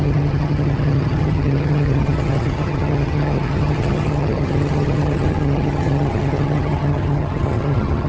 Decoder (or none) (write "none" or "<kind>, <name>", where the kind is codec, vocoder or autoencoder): vocoder, HiFi-GAN